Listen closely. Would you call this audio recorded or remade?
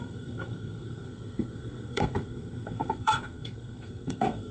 remade